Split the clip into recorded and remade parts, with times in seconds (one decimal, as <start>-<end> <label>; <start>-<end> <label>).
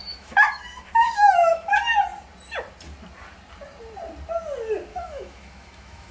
0.0-1.7 remade; 1.7-4.9 recorded; 4.9-6.1 remade